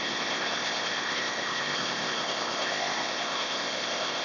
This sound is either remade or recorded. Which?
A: remade